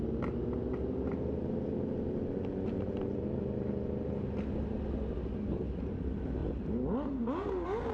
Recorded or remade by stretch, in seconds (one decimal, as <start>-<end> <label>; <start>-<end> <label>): 0.0-6.4 recorded; 6.4-7.2 remade; 7.2-7.9 recorded